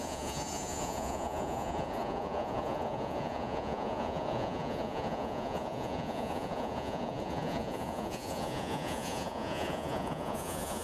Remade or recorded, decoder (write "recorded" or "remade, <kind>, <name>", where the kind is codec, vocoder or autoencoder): remade, vocoder, Vocos